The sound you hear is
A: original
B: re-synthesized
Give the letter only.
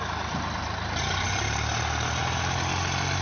A